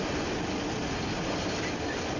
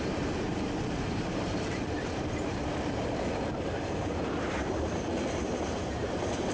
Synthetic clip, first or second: second